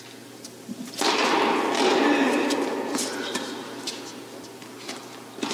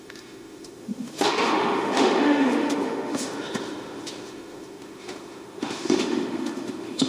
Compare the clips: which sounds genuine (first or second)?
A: first